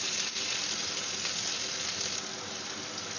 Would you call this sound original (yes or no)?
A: yes